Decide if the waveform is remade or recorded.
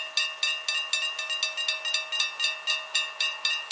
recorded